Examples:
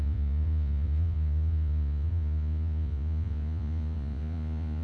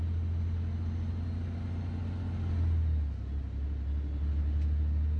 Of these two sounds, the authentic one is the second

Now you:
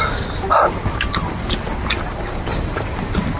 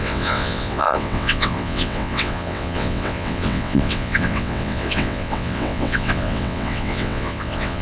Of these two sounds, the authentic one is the first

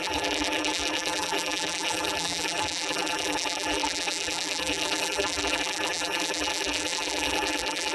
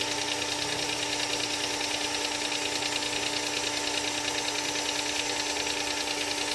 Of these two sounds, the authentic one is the second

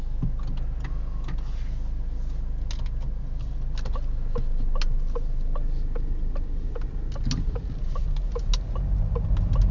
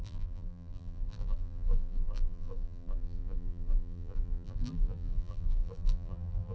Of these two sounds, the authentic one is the first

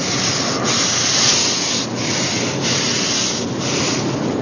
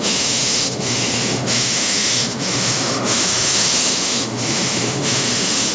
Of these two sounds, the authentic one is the first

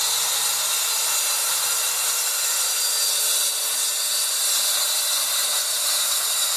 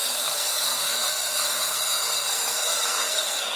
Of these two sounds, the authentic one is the first